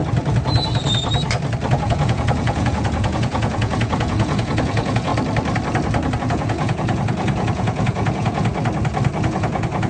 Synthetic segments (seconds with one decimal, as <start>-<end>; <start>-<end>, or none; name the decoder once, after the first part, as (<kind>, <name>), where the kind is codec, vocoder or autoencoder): 1.7-5.1 (vocoder, Vocos); 6.2-8.5; 9.2-9.9